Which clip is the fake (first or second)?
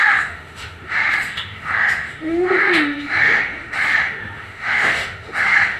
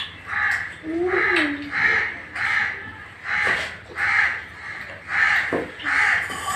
first